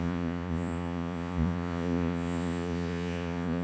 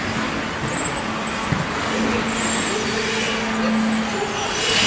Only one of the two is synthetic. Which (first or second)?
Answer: first